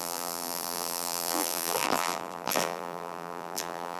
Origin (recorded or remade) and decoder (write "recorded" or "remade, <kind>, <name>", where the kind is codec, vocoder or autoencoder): remade, vocoder, BigVGAN v2